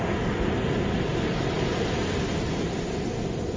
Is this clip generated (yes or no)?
no